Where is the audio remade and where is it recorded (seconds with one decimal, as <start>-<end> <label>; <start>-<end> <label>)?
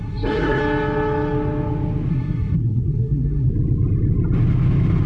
0.0-0.6 remade; 0.6-2.1 recorded; 2.1-3.5 remade; 3.5-5.1 recorded